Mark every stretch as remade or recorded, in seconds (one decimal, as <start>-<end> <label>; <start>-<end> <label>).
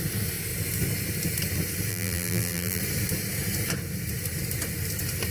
0.0-1.9 recorded; 1.9-2.8 remade; 2.8-5.3 recorded